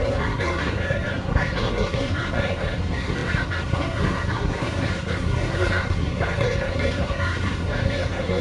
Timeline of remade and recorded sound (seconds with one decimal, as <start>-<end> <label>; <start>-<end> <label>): 0.0-8.4 remade